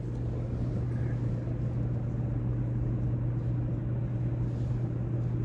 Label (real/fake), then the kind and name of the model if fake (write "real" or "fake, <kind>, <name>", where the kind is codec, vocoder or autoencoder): real